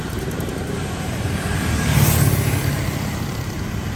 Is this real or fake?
fake